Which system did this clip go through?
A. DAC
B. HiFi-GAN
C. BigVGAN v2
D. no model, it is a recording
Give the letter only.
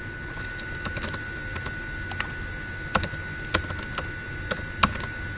D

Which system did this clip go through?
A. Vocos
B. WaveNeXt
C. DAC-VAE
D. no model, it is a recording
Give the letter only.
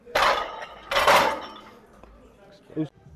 D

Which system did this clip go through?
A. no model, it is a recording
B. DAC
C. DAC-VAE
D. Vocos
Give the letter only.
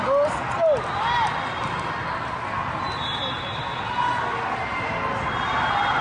A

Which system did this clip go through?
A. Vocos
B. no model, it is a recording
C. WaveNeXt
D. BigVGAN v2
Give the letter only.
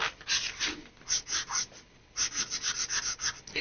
B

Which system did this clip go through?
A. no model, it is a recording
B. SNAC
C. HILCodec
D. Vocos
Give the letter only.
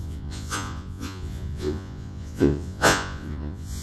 D